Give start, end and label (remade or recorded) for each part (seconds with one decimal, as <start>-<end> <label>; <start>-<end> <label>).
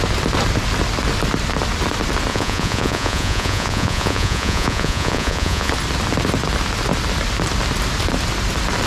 0.0-2.3 recorded; 2.3-5.7 remade; 5.7-8.9 recorded